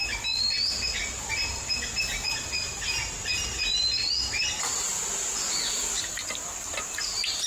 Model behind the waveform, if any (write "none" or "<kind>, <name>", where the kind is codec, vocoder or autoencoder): none